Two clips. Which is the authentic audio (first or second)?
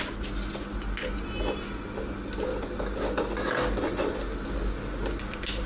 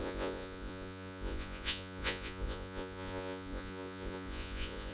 first